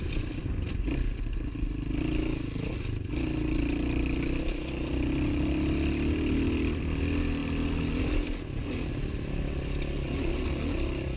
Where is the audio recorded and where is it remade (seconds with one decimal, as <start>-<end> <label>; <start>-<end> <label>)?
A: 0.0-11.2 recorded

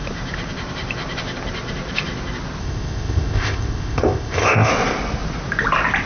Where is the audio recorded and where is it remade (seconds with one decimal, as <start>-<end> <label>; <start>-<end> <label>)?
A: 0.0-2.6 recorded; 2.6-4.7 remade; 4.7-6.1 recorded

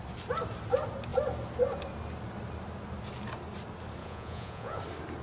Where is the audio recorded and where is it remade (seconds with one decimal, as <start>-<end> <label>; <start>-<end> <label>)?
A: 0.0-4.0 recorded; 4.0-4.8 remade; 4.8-5.2 recorded

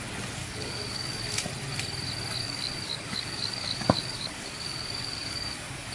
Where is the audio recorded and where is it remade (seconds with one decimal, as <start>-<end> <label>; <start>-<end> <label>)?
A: 0.0-0.4 recorded; 0.4-1.2 remade; 1.2-2.4 recorded; 2.4-5.9 remade